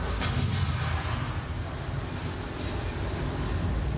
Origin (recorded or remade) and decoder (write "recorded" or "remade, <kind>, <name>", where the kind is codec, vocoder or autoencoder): recorded